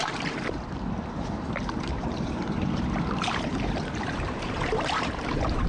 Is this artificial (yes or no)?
yes